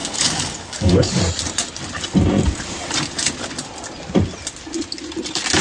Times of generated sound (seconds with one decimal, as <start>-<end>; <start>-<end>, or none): 0.0-1.2